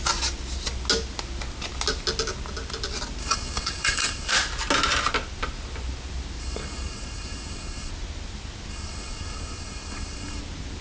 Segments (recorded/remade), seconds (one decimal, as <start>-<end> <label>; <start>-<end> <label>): 0.0-3.2 recorded; 3.2-4.3 remade; 4.3-6.4 recorded; 6.4-7.9 remade; 7.9-8.7 recorded; 8.7-10.4 remade; 10.4-10.8 recorded